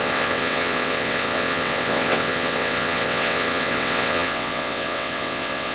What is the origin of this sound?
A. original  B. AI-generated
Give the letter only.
B